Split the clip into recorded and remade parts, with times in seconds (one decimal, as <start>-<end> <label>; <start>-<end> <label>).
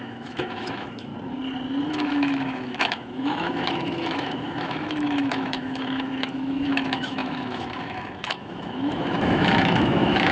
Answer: 0.0-1.1 remade; 1.1-1.9 recorded; 1.9-10.3 remade